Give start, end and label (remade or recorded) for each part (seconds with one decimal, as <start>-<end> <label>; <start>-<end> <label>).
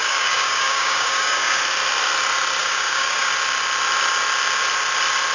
0.0-1.6 remade; 1.6-2.6 recorded; 2.6-3.3 remade; 3.3-5.3 recorded